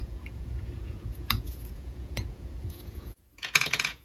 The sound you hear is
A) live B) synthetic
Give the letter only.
B